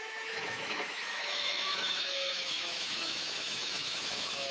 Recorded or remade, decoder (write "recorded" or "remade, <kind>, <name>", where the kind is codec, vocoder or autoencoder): remade, autoencoder, DAC-VAE